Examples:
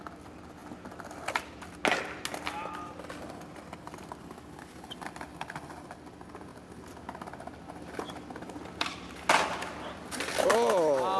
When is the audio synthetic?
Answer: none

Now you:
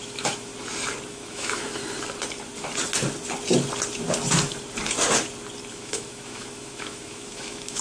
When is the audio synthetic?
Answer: 0.0-0.5 (autoencoder, DAC-VAE); 1.1-1.8; 5.7-7.8

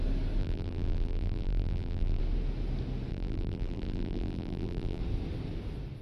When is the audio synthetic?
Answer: 0.4-2.2 (vocoder, BigVGAN v2); 3.1-5.0

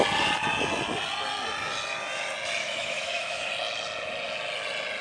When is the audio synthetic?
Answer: 2.6-3.5 (autoencoder, DAC-VAE)

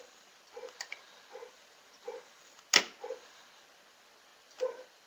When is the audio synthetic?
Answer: none

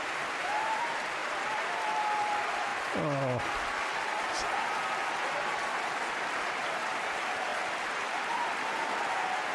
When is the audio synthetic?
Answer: 0.0-2.7 (vocoder, BigVGAN v2); 6.9-7.5; 9.1-9.5